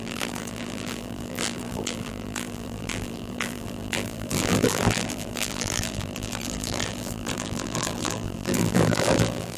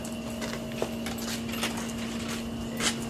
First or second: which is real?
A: second